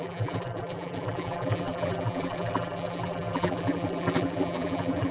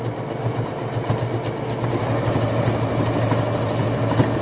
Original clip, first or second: second